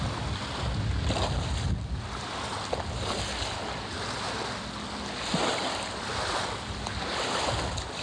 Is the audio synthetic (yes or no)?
no